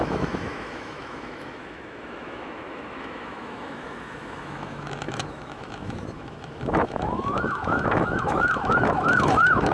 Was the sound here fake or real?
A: fake